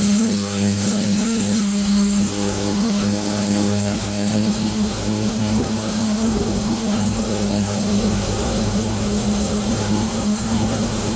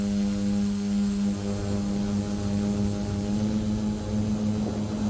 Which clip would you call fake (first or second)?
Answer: first